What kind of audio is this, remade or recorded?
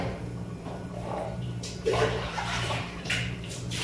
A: remade